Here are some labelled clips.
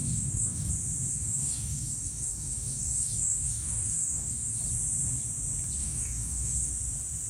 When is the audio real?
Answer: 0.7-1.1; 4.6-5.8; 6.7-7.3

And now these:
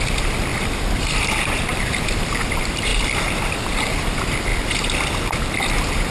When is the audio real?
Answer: 2.9-4.0; 4.5-5.6